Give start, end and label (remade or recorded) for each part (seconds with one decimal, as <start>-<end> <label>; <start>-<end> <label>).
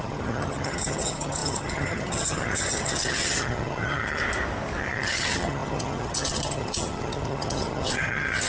0.0-4.2 remade; 4.2-4.8 recorded; 4.8-8.5 remade